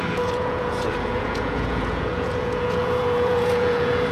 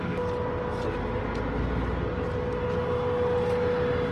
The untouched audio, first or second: second